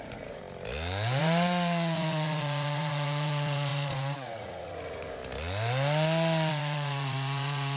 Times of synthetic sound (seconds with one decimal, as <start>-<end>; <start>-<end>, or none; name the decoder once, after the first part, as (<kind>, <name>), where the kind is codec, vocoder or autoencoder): 0.0-0.4 (vocoder, Vocos); 1.2-5.2; 6.5-7.8